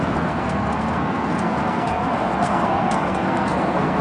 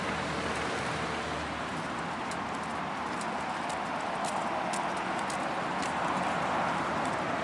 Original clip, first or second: second